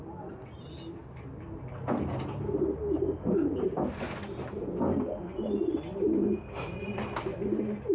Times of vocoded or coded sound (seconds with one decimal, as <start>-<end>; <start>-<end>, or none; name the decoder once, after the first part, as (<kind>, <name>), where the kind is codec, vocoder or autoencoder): 5.9-7.2 (vocoder, BigVGAN v2)